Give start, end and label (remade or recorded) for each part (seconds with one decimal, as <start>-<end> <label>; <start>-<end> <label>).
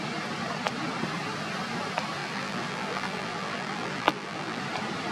0.0-2.2 recorded; 2.2-4.6 remade; 4.6-5.1 recorded